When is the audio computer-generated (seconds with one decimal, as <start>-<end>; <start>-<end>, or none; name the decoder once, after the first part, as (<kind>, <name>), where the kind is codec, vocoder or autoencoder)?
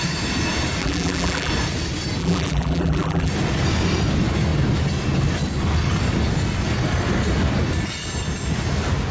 0.8-1.5 (vocoder, BigVGAN v2); 2.2-3.3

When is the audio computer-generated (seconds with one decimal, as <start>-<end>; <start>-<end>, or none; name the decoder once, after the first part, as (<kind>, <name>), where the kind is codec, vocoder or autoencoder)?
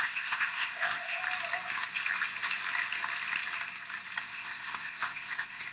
0.0-1.2 (codec, ZipCodec); 4.2-5.7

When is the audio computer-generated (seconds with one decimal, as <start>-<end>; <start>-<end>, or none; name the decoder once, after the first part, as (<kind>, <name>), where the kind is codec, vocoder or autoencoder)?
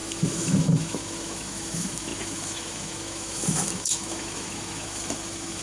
0.0-5.6 (autoencoder, DAC-VAE)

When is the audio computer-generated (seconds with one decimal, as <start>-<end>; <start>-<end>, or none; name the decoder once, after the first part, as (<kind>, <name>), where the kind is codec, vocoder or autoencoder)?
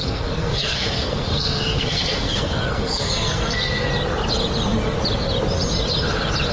0.0-3.9 (codec, SNAC)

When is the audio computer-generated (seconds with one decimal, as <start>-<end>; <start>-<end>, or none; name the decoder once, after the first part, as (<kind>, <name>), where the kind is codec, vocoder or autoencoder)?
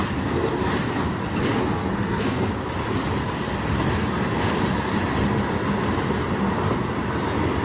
1.8-2.5 (codec, SNAC)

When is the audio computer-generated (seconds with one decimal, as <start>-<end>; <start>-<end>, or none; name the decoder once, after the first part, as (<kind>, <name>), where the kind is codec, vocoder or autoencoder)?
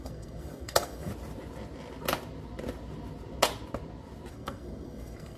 0.0-1.1 (codec, SNAC); 4.3-5.4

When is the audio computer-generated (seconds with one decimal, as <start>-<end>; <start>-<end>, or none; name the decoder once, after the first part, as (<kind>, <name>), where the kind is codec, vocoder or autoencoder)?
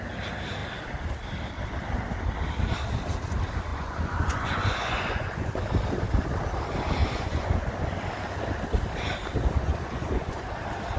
3.7-5.5 (vocoder, Vocos); 7.0-7.6; 9.6-10.5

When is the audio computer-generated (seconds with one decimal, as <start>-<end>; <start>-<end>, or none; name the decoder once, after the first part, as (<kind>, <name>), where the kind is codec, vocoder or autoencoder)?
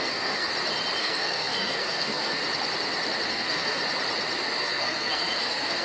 0.0-0.5 (codec, SNAC); 1.0-2.4; 3.3-3.8; 4.6-5.8